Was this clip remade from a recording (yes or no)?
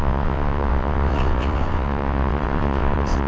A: yes